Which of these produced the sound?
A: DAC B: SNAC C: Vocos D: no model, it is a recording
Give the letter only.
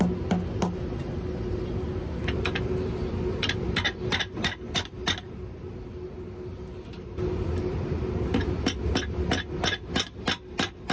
D